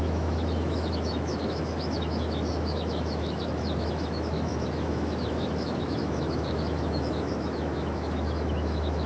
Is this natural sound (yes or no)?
no